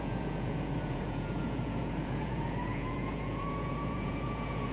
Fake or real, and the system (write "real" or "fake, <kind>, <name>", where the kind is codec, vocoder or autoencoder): fake, vocoder, Vocos